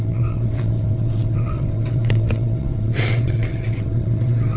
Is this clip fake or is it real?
fake